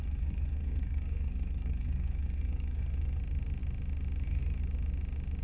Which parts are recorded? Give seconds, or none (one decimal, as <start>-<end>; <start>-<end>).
3.2-5.4